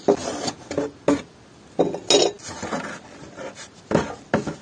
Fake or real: real